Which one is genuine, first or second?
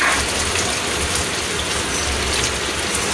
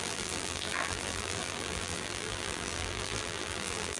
first